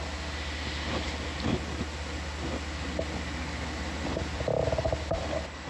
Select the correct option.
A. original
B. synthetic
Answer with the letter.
A